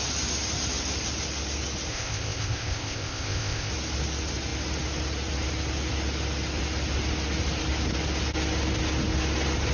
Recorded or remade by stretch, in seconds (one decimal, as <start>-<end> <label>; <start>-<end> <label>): 0.0-1.9 recorded; 1.9-3.7 remade; 3.7-9.7 recorded

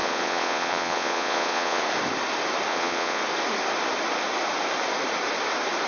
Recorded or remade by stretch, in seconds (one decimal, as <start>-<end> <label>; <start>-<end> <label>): 0.0-1.8 remade; 1.8-2.7 recorded; 2.7-3.2 remade; 3.2-5.9 recorded

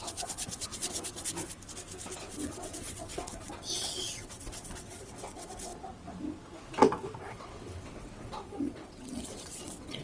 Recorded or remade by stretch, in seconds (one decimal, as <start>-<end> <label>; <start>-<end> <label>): 0.0-1.1 remade; 1.1-2.2 recorded; 2.2-5.7 remade; 5.7-7.2 recorded; 7.2-10.0 remade

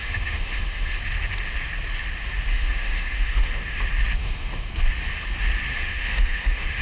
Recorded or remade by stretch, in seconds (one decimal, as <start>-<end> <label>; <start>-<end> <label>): 0.0-1.0 remade; 1.0-2.5 recorded; 2.5-3.8 remade; 3.8-4.2 recorded; 4.2-4.7 remade; 4.7-5.7 recorded; 5.7-6.8 remade

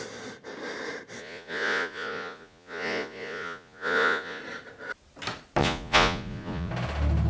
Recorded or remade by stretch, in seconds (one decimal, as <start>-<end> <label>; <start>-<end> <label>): 0.0-1.2 recorded; 1.2-4.4 remade; 4.4-5.6 recorded; 5.6-6.7 remade; 6.7-7.3 recorded

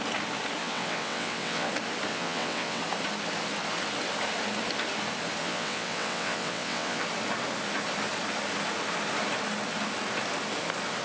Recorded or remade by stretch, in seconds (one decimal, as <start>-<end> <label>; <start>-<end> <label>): 0.0-0.6 recorded; 0.6-1.7 remade; 1.7-2.1 recorded; 2.1-2.8 remade; 2.8-5.4 recorded; 5.4-7.0 remade; 7.0-11.0 recorded